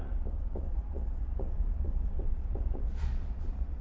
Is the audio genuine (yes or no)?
no